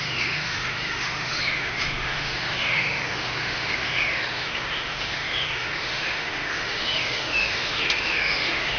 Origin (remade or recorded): remade